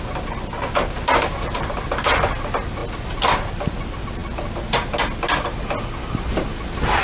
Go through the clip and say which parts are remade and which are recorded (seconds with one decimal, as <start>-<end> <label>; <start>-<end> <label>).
0.0-7.0 recorded